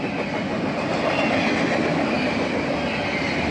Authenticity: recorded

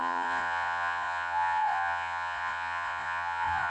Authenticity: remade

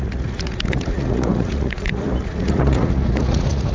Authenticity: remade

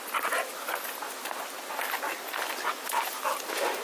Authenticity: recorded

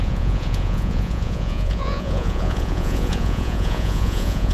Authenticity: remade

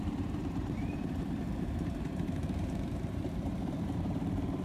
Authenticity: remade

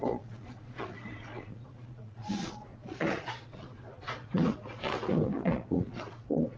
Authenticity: remade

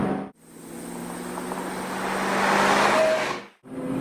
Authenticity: recorded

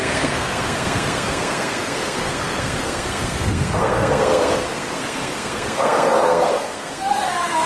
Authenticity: remade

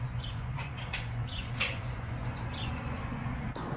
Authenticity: remade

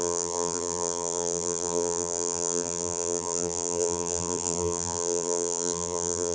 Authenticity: remade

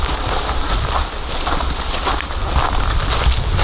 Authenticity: recorded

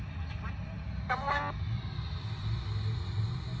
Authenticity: recorded